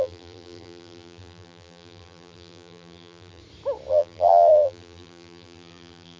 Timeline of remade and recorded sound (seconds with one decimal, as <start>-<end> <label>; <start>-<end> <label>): 0.0-3.4 remade; 3.4-3.9 recorded; 3.9-6.2 remade